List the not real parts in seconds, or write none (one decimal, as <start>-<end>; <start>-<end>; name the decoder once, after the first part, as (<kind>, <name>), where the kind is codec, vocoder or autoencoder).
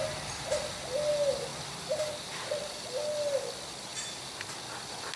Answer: 1.5-2.4 (vocoder, BigVGAN v2)